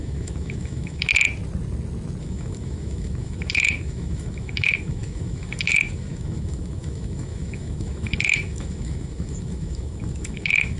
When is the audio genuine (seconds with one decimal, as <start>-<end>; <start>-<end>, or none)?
1.1-2.2